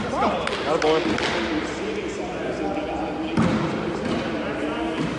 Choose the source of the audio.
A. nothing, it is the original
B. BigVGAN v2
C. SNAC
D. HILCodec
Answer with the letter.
A